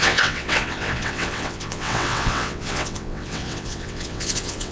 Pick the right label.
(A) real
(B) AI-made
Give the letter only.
B